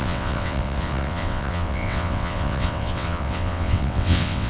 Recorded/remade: remade